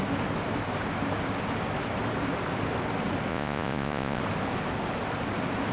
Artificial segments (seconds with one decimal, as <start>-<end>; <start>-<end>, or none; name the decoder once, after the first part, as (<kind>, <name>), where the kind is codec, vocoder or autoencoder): 3.3-4.2 (vocoder, Vocos)